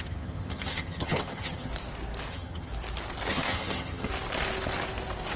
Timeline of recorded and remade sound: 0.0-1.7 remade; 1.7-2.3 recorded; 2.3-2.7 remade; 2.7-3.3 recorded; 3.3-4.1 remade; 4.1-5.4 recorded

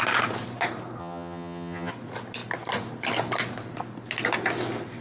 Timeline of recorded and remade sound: 0.0-1.0 recorded; 1.0-1.9 remade; 1.9-5.0 recorded

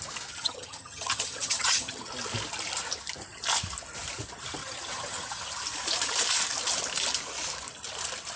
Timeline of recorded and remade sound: 0.0-0.4 recorded; 0.4-2.1 remade; 2.1-4.6 recorded; 4.6-5.5 remade; 5.5-8.4 recorded

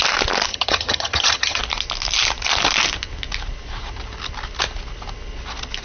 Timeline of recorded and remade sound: 0.0-0.5 recorded; 0.5-1.6 remade; 1.6-5.8 recorded

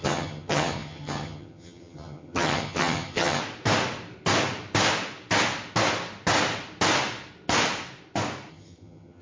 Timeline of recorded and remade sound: 0.0-3.4 remade; 3.4-8.5 recorded; 8.5-9.2 remade

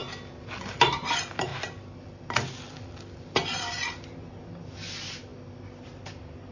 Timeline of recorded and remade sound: 0.0-6.5 recorded